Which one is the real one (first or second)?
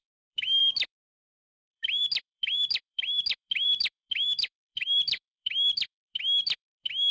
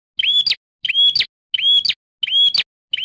second